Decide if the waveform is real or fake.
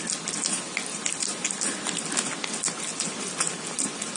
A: real